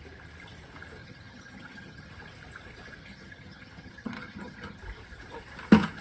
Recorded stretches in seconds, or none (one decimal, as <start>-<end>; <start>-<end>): 0.0-1.0; 2.1-3.0; 4.8-6.0